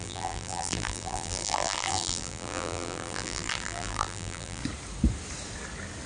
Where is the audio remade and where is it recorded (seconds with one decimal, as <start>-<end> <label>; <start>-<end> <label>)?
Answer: 0.0-4.6 remade; 4.6-6.1 recorded